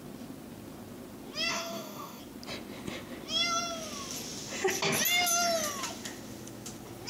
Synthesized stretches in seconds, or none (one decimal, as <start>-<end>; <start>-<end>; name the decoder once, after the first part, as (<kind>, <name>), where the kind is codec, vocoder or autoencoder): 1.5-2.2 (codec, DAC)